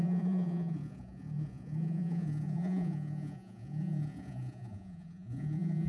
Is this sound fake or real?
fake